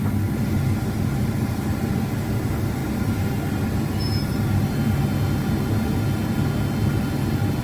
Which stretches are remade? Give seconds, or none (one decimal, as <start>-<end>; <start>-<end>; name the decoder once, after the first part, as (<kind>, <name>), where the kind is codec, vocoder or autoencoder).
none